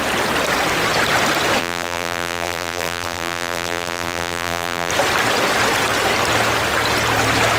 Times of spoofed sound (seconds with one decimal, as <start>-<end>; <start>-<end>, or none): 1.6-4.9